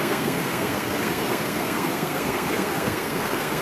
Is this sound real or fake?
fake